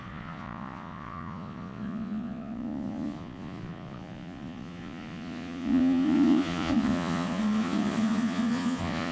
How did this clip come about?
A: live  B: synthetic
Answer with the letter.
B